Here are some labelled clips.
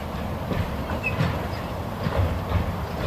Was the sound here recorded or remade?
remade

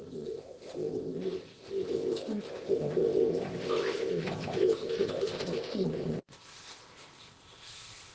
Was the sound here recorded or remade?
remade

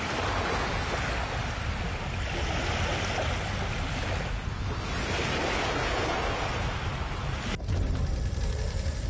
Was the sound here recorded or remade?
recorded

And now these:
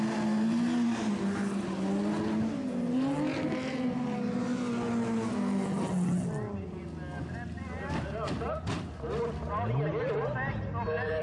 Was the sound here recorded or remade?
recorded